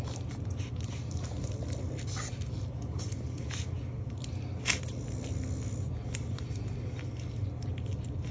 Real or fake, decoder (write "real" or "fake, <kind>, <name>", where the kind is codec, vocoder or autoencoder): real